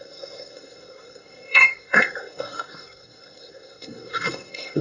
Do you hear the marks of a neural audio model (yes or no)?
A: yes